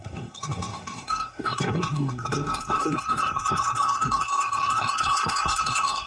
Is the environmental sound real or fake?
fake